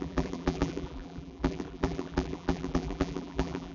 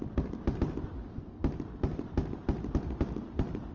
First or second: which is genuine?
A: second